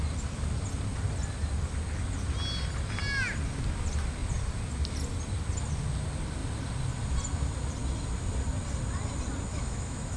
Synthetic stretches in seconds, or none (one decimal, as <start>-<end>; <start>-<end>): 9.5-10.2